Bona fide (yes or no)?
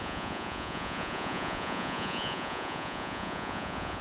no